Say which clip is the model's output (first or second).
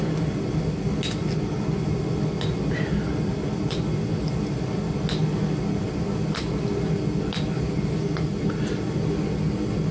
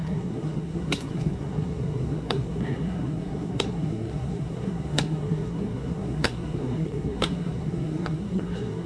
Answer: second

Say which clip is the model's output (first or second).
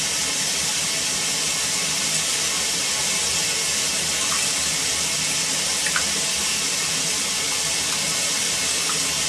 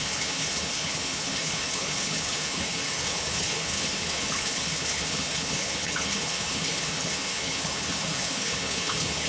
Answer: second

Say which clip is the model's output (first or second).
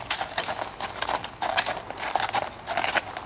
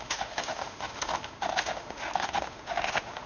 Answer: second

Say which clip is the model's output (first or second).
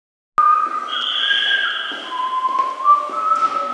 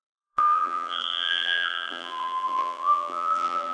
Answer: second